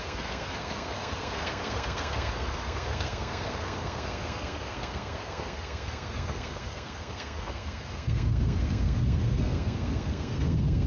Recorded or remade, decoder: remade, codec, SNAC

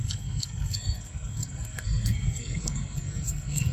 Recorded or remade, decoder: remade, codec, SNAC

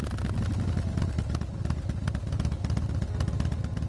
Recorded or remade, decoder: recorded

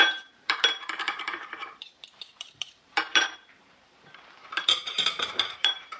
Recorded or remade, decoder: remade, vocoder, BigVGAN v2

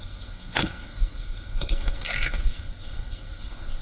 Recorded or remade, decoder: remade, codec, SNAC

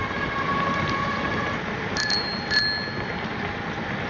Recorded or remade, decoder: recorded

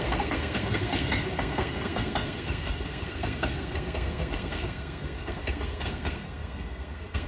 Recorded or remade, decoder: remade, codec, SNAC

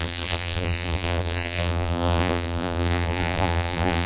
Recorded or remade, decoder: remade, vocoder, BigVGAN v2